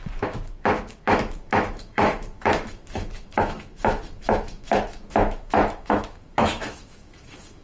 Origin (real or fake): fake